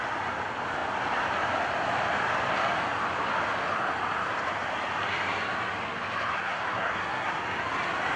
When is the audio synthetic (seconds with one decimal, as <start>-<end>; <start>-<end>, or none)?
6.3-7.3